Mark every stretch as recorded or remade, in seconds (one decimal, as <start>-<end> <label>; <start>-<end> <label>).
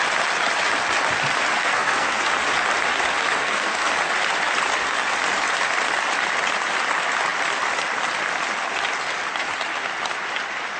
0.0-1.5 recorded; 1.5-2.2 remade; 2.2-3.4 recorded; 3.4-3.9 remade; 3.9-10.8 recorded